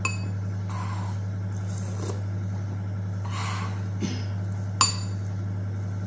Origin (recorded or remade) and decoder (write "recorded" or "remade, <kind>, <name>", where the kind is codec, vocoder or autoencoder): recorded